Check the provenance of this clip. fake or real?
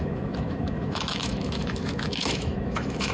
fake